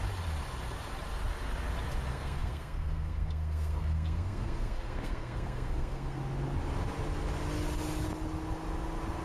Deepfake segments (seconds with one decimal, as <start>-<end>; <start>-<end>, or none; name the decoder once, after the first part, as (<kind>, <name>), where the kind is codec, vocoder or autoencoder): 2.1-6.2 (codec, SNAC)